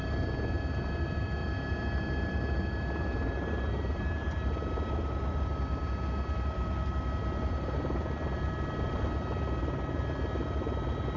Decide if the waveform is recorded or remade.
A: recorded